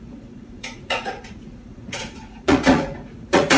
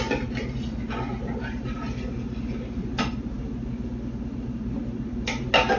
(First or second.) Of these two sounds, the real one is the second